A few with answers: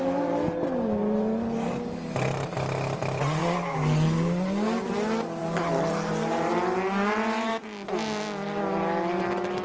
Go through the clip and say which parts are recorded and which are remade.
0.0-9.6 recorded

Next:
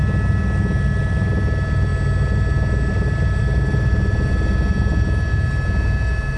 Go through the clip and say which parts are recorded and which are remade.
0.0-6.4 recorded

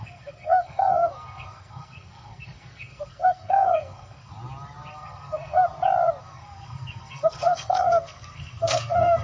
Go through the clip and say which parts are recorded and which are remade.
0.0-4.3 remade; 4.3-4.9 recorded; 4.9-5.6 remade; 5.6-6.2 recorded; 6.2-9.2 remade

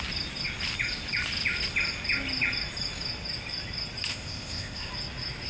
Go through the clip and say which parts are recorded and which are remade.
0.0-4.1 recorded; 4.1-4.9 remade; 4.9-5.5 recorded

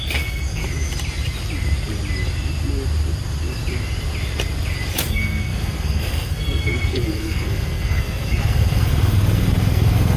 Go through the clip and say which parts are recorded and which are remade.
0.0-0.6 remade; 0.6-5.1 recorded; 5.1-10.2 remade

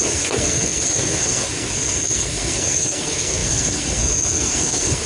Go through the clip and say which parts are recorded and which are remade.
0.0-5.1 remade

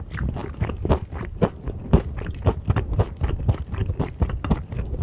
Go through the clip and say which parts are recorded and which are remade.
0.0-5.0 recorded